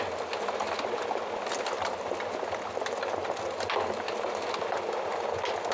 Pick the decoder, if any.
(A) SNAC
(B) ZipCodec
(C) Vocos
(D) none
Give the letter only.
D